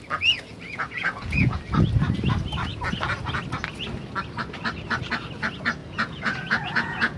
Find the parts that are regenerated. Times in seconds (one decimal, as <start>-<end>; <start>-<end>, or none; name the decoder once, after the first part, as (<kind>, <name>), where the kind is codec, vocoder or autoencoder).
0.5-1.6 (vocoder, Vocos); 5.8-7.2